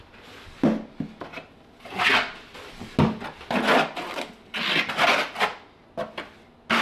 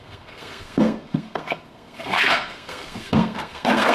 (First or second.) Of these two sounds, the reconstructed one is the second